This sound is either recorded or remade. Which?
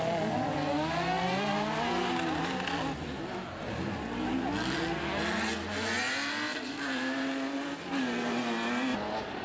recorded